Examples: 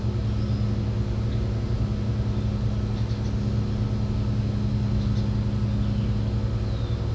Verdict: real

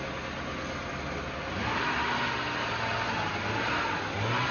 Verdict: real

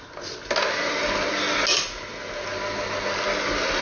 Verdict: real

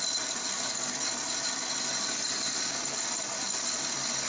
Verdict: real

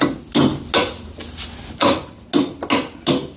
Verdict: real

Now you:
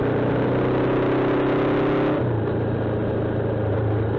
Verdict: real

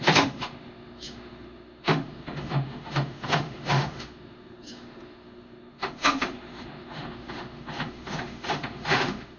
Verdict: fake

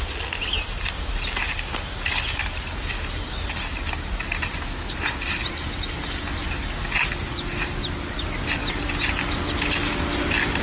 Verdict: real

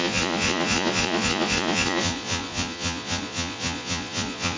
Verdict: fake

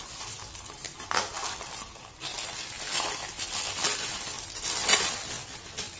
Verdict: real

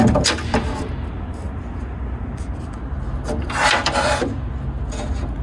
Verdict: real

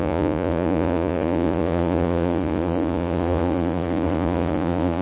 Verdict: fake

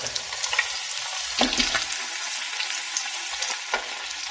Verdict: real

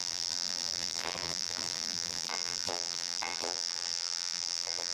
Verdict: fake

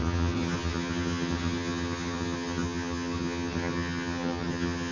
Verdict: fake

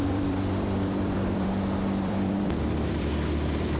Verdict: fake